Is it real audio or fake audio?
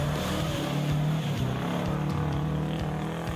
real